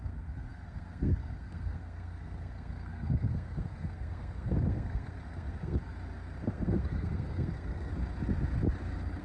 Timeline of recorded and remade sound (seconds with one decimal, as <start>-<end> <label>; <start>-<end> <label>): 0.0-5.8 remade; 5.8-6.4 recorded; 6.4-7.9 remade; 7.9-9.2 recorded